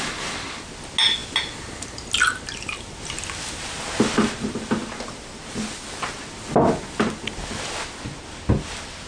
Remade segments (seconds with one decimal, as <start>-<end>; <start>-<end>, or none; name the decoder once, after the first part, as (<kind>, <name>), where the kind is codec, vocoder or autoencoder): none